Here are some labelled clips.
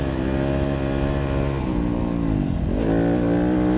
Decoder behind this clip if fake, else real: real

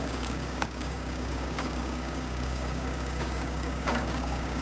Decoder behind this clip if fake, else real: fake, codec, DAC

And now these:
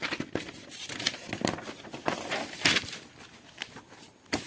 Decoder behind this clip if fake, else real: real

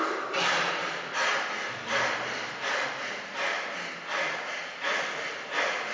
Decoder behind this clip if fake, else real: real